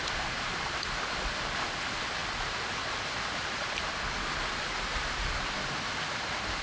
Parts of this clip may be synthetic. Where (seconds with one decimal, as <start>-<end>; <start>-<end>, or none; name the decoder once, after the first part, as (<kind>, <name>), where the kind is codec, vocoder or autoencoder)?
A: 2.2-3.1 (vocoder, BigVGAN v2)